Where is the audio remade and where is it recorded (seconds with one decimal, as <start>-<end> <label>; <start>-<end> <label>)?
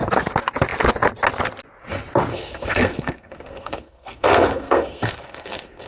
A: 0.0-2.3 recorded; 2.3-5.9 remade